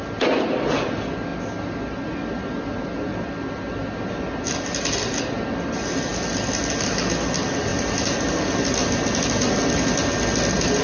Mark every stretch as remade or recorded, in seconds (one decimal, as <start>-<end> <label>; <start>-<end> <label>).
0.0-7.7 recorded; 7.7-8.3 remade; 8.3-10.8 recorded